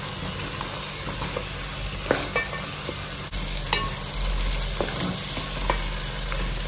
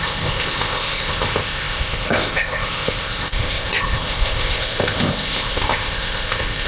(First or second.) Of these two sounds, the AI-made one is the second